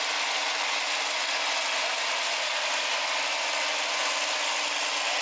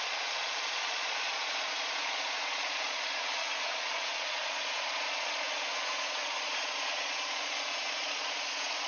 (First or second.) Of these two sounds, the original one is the first